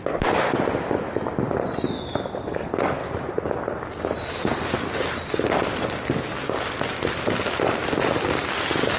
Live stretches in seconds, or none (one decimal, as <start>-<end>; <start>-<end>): 0.0-9.0